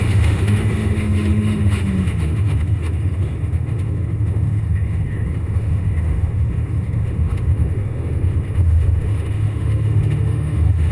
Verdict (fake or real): fake